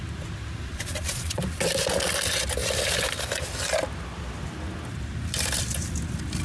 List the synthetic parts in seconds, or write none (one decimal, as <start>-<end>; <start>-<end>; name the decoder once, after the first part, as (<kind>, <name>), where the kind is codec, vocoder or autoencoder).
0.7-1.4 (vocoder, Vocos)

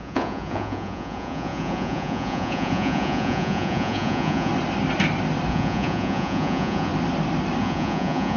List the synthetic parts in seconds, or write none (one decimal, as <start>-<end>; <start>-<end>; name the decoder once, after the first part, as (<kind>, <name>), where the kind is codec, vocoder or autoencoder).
0.0-4.5 (vocoder, Vocos); 5.5-6.9; 7.6-8.4

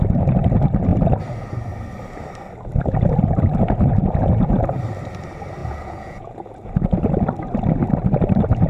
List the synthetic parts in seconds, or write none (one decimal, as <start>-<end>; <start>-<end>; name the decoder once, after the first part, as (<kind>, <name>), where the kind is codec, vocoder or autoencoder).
5.6-6.7 (vocoder, Vocos)